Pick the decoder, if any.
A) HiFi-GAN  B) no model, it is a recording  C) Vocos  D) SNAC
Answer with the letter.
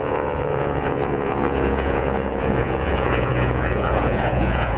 C